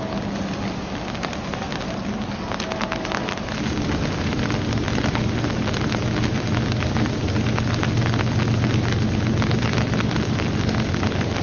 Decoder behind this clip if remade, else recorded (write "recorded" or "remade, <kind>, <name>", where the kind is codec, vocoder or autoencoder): recorded